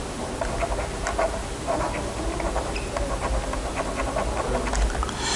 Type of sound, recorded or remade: recorded